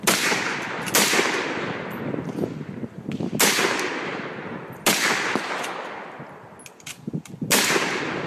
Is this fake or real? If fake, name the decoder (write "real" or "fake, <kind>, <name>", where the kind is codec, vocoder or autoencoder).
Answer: real